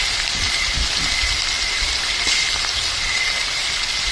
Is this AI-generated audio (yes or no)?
yes